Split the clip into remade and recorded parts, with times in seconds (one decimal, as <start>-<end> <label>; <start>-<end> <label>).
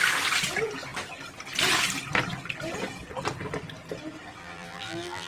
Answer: 0.0-4.4 recorded; 4.4-5.3 remade